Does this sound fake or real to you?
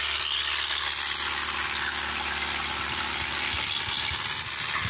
real